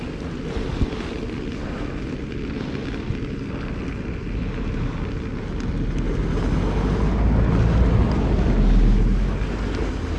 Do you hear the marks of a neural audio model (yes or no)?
no